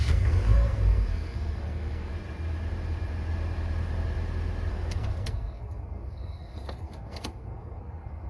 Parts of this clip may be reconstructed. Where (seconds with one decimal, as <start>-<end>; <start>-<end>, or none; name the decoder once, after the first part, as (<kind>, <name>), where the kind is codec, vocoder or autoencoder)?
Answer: 0.0-2.1 (codec, SNAC); 4.7-8.3